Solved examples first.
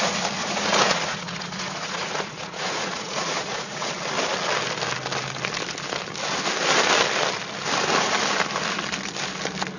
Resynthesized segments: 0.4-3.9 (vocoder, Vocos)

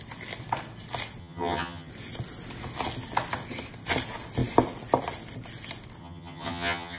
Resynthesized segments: 1.2-1.9 (vocoder, HiFi-GAN); 6.0-7.0

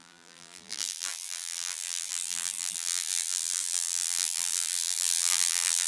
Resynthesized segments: 0.0-5.9 (vocoder, BigVGAN v2)

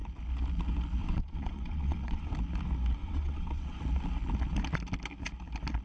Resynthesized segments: 1.0-2.3 (vocoder, WaveNeXt); 3.0-3.8

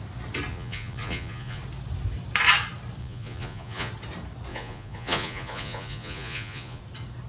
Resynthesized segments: 0.5-1.6 (vocoder, Vocos); 3.0-3.9; 4.5-6.8

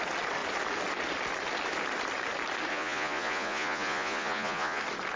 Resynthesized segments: 2.7-4.8 (vocoder, Vocos)

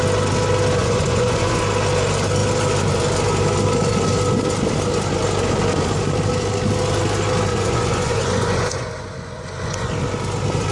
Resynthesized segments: 0.8-1.6 (vocoder, Vocos); 7.5-9.9